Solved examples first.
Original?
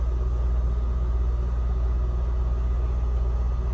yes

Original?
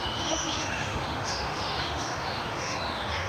no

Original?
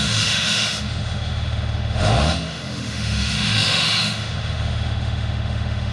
no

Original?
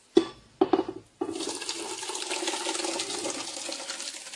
yes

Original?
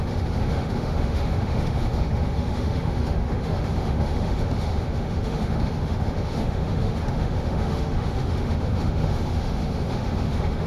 no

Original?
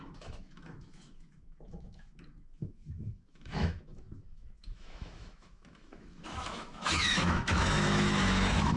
no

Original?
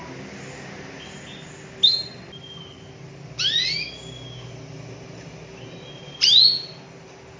yes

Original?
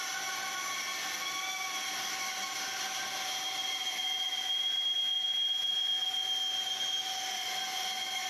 yes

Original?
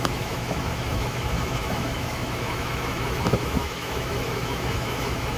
no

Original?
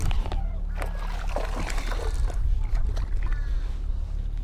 yes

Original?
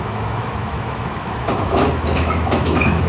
no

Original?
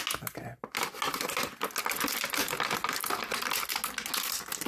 yes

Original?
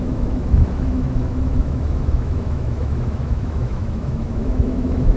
no